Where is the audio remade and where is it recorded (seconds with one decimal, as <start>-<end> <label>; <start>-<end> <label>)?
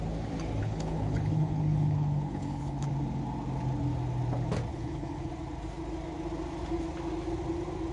0.0-0.6 recorded; 0.6-2.9 remade; 2.9-4.7 recorded; 4.7-5.3 remade; 5.3-7.9 recorded